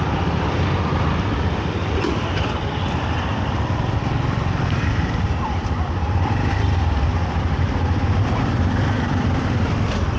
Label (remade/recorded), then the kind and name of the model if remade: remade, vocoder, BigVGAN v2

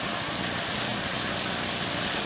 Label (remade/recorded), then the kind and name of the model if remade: recorded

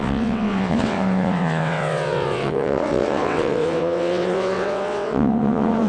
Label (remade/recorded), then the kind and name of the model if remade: remade, vocoder, WaveNeXt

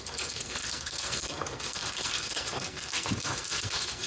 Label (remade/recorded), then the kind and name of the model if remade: remade, codec, SNAC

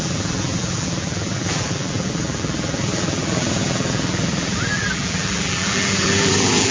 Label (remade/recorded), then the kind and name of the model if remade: remade, vocoder, BigVGAN v2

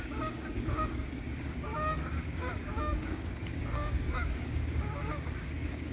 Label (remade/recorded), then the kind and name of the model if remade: remade, codec, DAC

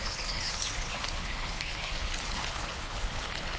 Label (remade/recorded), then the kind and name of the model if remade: remade, codec, HILCodec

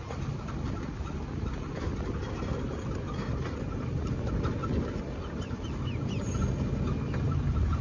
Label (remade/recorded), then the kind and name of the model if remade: recorded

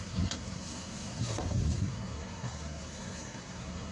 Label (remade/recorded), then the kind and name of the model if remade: remade, codec, SNAC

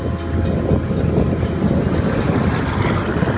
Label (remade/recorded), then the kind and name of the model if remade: recorded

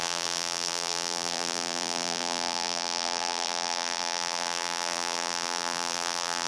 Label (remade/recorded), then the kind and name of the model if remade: remade, vocoder, BigVGAN v2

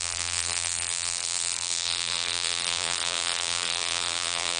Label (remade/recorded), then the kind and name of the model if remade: remade, vocoder, BigVGAN v2